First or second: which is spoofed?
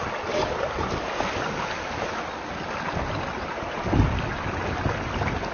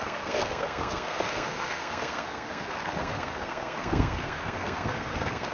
second